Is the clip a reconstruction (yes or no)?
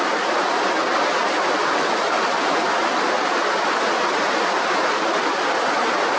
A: no